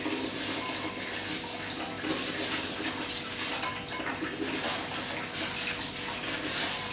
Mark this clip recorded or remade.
recorded